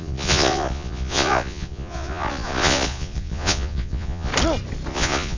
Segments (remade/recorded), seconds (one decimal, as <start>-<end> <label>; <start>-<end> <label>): 0.0-4.3 remade; 4.3-4.9 recorded; 4.9-5.4 remade